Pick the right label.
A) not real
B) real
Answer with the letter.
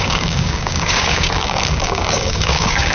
A